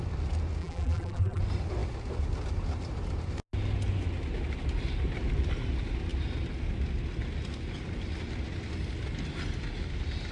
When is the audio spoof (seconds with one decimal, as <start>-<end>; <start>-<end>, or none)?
0.6-1.4